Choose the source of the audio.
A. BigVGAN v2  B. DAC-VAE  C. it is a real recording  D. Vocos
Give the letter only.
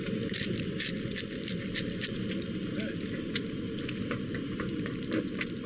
A